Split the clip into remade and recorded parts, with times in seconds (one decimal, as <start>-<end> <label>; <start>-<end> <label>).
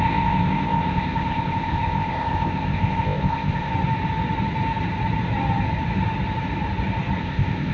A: 0.0-3.7 remade; 3.7-7.2 recorded; 7.2-7.7 remade